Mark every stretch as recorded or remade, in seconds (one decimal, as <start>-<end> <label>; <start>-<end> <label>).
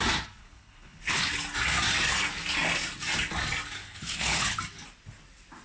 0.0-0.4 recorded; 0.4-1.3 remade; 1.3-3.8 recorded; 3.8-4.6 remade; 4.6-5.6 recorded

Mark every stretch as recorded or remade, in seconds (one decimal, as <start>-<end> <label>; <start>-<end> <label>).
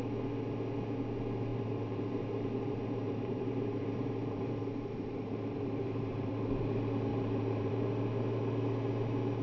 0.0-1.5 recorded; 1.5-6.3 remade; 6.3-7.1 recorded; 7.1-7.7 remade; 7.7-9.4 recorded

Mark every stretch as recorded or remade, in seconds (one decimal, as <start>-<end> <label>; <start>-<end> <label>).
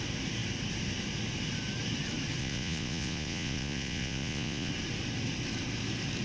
0.0-2.4 recorded; 2.4-4.7 remade; 4.7-6.2 recorded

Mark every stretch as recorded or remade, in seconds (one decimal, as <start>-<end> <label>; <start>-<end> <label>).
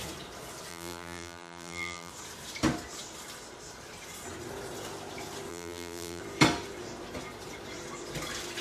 0.0-0.7 recorded; 0.7-2.1 remade; 2.1-5.5 recorded; 5.5-6.2 remade; 6.2-8.6 recorded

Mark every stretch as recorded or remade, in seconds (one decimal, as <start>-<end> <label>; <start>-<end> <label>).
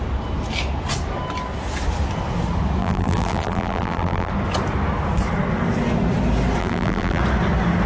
0.0-2.8 recorded; 2.8-4.3 remade; 4.3-6.6 recorded; 6.6-7.2 remade; 7.2-7.9 recorded